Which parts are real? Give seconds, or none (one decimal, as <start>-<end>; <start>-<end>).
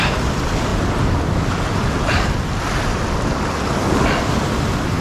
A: 0.0-5.0